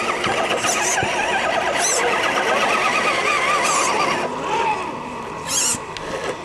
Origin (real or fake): real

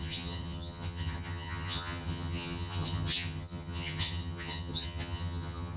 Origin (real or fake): fake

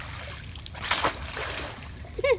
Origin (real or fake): real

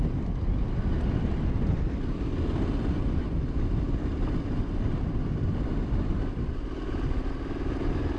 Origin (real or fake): real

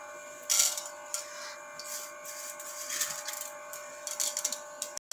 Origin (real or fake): real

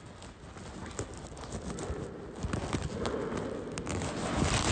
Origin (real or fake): real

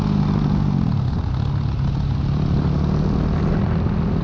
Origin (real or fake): real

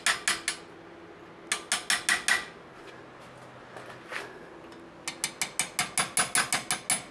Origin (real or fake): real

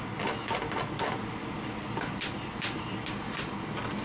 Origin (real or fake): real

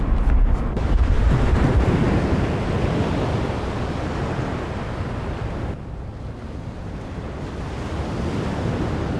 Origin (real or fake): real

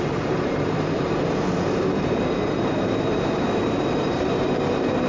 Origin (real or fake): fake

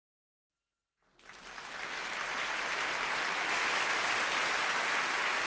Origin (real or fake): real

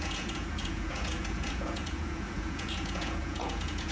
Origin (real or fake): fake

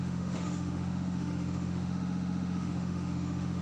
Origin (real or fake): fake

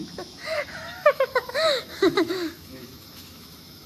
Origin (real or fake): fake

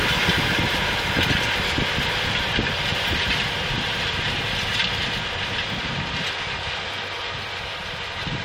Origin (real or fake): real